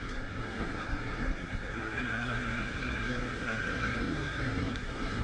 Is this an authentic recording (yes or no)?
no